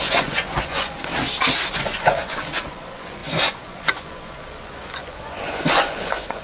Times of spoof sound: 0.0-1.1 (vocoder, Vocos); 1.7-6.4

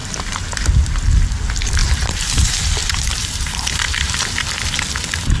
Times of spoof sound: 0.0-0.7 (vocoder, BigVGAN v2); 1.8-4.4